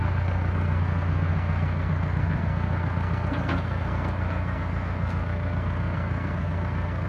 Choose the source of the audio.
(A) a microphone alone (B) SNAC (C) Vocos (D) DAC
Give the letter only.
B